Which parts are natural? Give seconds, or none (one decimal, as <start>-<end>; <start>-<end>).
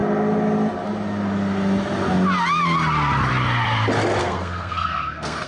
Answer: 0.0-4.2